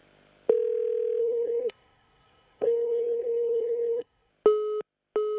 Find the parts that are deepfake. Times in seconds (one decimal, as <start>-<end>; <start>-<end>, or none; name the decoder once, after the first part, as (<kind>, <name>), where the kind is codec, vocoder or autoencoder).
1.2-4.3 (codec, SNAC)